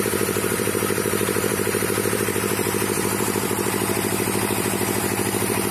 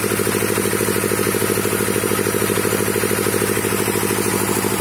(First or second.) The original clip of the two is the second